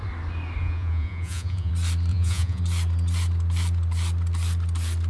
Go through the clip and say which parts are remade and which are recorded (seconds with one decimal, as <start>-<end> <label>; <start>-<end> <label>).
0.0-0.6 recorded; 0.6-1.7 remade; 1.7-2.1 recorded; 2.1-2.6 remade; 2.6-5.1 recorded